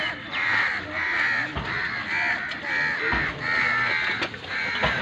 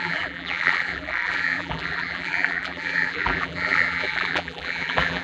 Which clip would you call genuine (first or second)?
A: first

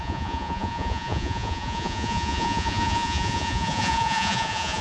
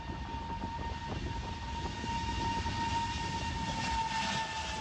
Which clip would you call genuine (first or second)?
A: second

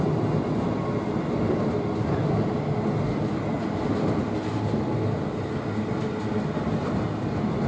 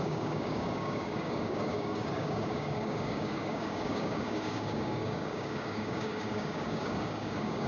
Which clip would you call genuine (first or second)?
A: first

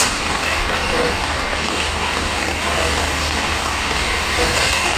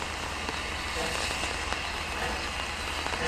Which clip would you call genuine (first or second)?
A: second